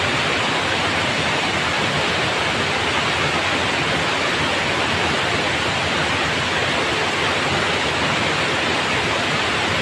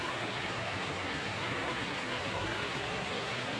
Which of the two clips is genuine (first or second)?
first